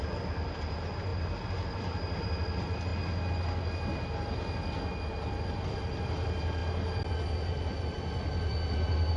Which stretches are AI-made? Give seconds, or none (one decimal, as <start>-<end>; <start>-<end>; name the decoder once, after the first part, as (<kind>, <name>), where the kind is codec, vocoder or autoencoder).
0.0-2.9 (vocoder, BigVGAN v2); 5.4-6.6; 7.5-9.2